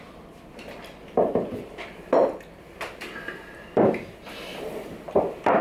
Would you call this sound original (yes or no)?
no